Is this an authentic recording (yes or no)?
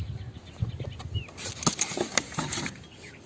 yes